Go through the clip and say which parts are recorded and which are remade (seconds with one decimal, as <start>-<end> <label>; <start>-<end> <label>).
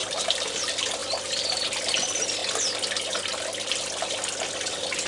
0.0-0.6 remade; 0.6-5.1 recorded